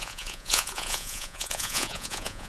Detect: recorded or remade remade